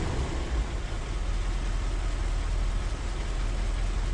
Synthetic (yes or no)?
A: no